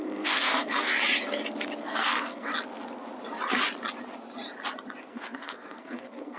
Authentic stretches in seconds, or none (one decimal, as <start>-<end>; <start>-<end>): 0.9-1.8; 2.5-5.0